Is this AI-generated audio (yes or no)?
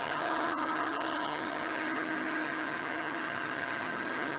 yes